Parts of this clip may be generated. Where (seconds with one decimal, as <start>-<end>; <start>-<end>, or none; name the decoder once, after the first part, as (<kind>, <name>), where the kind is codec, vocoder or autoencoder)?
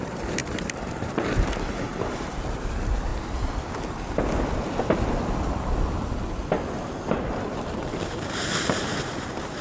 0.0-3.1 (vocoder, BigVGAN v2); 7.6-9.6